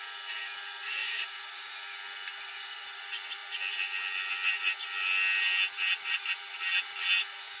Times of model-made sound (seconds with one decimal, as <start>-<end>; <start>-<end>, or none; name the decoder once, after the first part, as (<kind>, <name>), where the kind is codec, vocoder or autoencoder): 1.0-1.7 (vocoder, BigVGAN v2); 2.3-3.0